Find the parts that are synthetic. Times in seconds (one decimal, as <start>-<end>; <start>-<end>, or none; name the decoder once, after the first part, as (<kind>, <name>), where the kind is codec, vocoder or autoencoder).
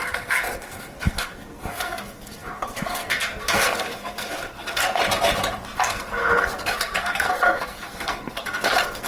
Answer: 0.0-5.0 (codec, SNAC); 5.8-9.1